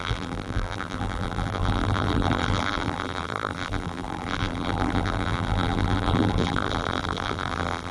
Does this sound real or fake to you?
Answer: fake